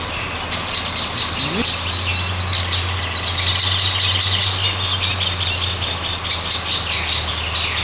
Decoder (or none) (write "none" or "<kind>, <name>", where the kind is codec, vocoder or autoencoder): none